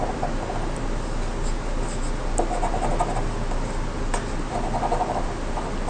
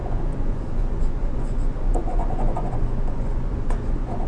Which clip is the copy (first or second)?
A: second